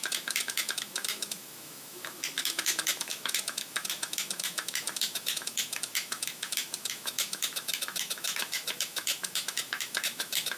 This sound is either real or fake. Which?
fake